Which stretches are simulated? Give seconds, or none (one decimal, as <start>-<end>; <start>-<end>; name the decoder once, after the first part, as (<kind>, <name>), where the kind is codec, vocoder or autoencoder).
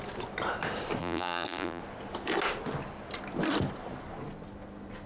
1.0-1.8 (vocoder, BigVGAN v2)